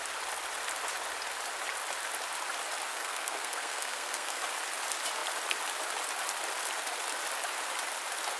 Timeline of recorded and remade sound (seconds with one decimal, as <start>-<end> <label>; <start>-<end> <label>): 0.0-2.9 recorded; 2.9-4.4 remade; 4.4-8.4 recorded